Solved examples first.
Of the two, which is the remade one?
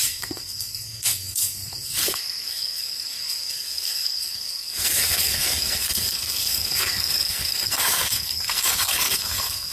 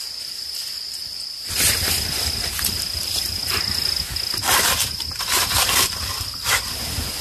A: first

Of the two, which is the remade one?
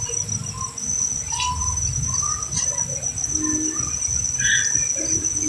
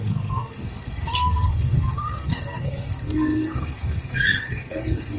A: second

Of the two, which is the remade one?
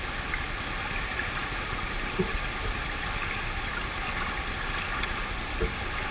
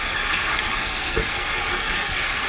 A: second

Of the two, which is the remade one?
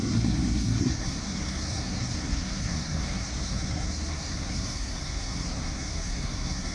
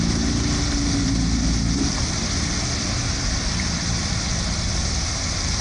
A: first